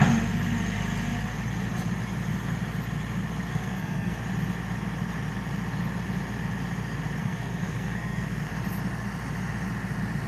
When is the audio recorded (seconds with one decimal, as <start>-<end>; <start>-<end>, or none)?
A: 0.0-3.5; 4.2-7.2; 8.5-10.3